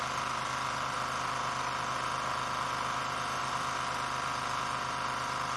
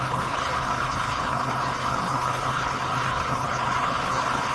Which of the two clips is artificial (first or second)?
second